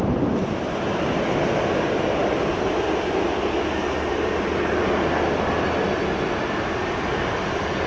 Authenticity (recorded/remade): recorded